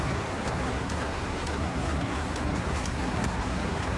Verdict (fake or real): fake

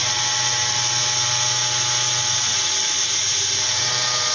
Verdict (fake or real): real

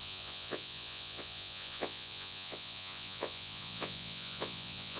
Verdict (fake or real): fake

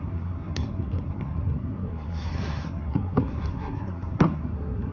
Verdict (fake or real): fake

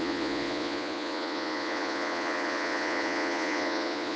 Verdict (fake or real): fake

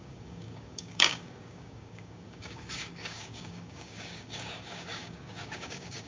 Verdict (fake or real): fake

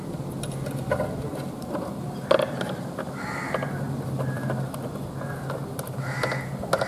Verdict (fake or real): real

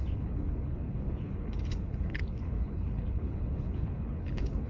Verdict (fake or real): fake